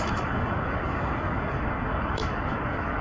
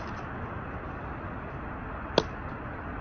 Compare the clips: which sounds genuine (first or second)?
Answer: second